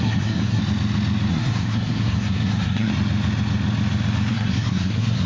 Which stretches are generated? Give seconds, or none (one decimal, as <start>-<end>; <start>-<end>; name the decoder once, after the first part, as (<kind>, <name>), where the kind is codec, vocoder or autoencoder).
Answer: 0.0-0.6 (codec, SNAC); 1.3-2.9; 4.3-5.3